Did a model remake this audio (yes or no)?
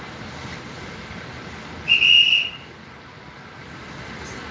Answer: no